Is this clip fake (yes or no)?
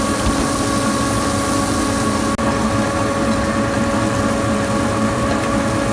no